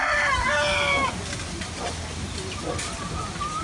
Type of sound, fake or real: real